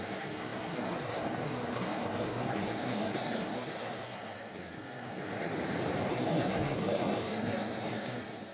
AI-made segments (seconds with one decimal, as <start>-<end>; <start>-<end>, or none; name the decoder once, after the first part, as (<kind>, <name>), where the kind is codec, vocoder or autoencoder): 0.0-5.5 (codec, SNAC); 6.1-8.5